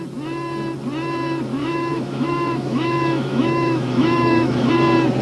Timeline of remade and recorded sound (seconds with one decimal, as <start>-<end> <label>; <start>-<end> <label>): 0.0-1.6 recorded; 1.6-4.7 remade; 4.7-5.2 recorded

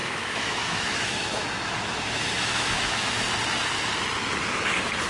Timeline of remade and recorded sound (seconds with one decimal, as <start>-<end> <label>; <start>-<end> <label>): 0.0-3.1 remade; 3.1-5.1 recorded

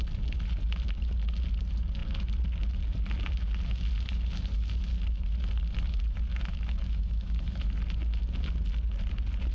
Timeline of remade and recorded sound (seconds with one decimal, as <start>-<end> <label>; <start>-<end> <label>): 0.0-6.3 recorded; 6.3-7.7 remade; 7.7-9.5 recorded

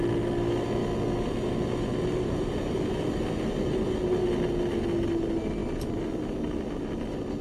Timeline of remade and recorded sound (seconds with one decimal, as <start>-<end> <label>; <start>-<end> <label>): 0.0-7.4 recorded

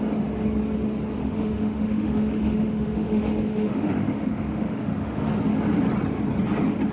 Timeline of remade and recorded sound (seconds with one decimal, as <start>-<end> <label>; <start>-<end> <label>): 0.0-1.2 recorded; 1.2-5.3 remade; 5.3-6.9 recorded

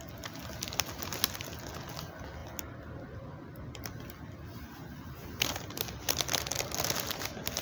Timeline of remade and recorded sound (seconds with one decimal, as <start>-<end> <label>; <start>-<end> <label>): 0.0-7.6 recorded

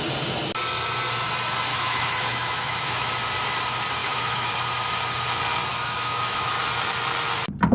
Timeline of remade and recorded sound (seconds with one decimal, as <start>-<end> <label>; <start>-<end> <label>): 0.0-1.7 recorded; 1.7-3.1 remade; 3.1-4.0 recorded; 4.0-4.5 remade; 4.5-5.7 recorded; 5.7-6.5 remade; 6.5-7.7 recorded